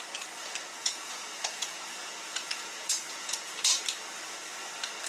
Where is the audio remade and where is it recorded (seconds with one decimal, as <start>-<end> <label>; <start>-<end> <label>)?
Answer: 0.0-0.8 recorded; 0.8-3.5 remade; 3.5-5.1 recorded